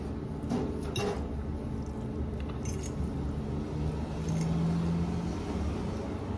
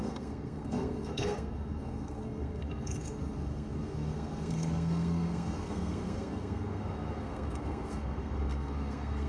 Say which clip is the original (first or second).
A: first